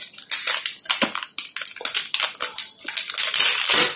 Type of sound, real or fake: real